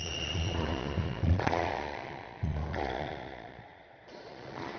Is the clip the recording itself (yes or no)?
no